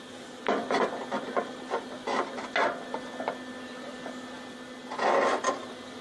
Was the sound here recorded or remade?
recorded